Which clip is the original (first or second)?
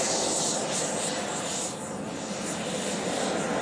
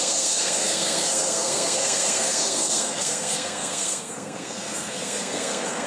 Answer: first